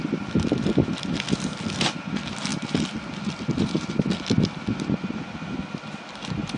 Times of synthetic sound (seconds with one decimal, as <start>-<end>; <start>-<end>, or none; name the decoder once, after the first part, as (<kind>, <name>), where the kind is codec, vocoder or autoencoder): none